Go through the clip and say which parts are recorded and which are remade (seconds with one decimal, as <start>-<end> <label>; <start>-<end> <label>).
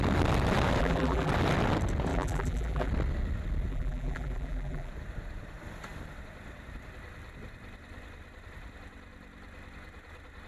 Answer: 0.0-0.8 recorded; 0.8-1.3 remade; 1.3-2.1 recorded; 2.1-2.9 remade; 2.9-3.7 recorded; 3.7-4.9 remade; 4.9-10.5 recorded